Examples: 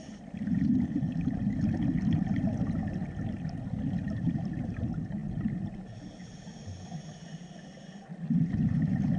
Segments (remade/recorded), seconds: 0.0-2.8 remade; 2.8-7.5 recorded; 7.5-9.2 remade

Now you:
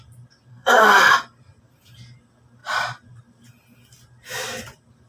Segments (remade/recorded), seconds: 0.0-0.5 recorded; 0.5-1.1 remade; 1.1-5.1 recorded

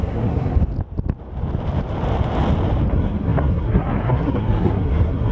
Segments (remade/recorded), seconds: 0.0-0.6 remade; 0.6-2.9 recorded; 2.9-5.3 remade

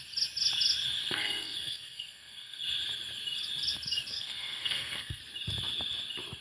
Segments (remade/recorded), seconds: 0.0-1.0 recorded; 1.0-2.6 remade; 2.6-4.1 recorded; 4.1-5.2 remade; 5.2-6.4 recorded

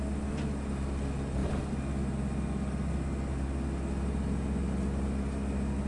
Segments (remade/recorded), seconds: 0.0-5.9 recorded

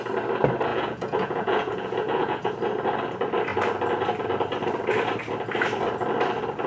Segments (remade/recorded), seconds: 0.0-0.7 recorded; 0.7-2.5 remade; 2.5-6.7 recorded

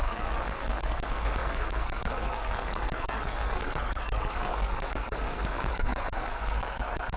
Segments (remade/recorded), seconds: 0.0-7.2 remade